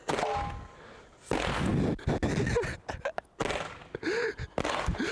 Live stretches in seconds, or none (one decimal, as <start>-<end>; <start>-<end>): 0.0-5.1